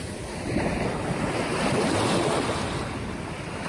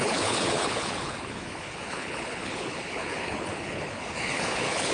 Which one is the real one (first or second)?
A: first